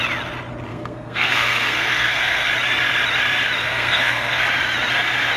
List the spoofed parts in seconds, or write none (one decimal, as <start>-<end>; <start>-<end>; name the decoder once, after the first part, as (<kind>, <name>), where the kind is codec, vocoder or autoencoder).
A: 0.7-2.5 (codec, SNAC); 3.6-4.4